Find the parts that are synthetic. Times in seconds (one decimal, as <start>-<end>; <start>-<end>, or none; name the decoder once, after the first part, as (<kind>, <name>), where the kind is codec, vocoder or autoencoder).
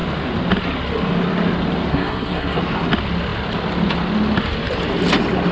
1.9-2.6 (codec, SNAC)